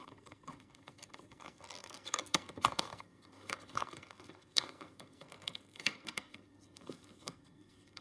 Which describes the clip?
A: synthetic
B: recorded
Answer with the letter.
A